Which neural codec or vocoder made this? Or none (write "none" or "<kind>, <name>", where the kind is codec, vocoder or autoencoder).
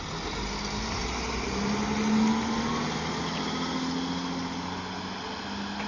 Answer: none